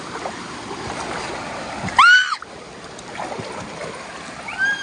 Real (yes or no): yes